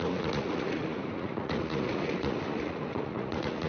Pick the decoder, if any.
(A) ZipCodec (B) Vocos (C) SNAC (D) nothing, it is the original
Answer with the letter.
B